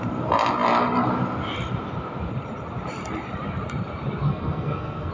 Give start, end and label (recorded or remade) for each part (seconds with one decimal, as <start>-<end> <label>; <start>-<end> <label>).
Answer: 0.0-4.3 recorded; 4.3-5.1 remade